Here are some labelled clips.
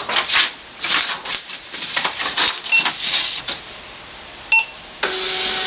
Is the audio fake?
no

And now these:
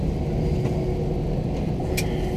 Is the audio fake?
no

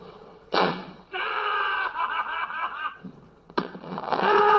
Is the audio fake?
yes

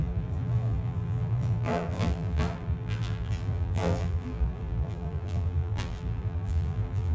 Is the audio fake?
yes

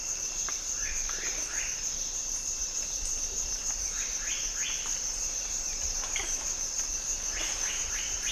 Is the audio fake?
yes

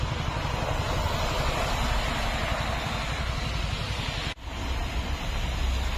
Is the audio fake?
no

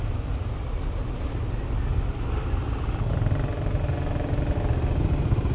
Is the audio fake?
no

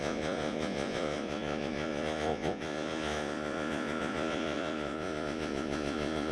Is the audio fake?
yes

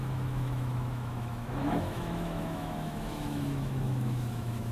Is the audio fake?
yes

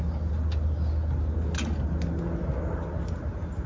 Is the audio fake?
no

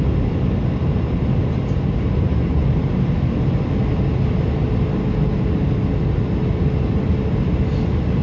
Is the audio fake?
no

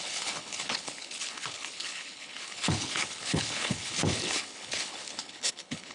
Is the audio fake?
yes